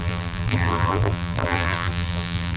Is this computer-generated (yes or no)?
yes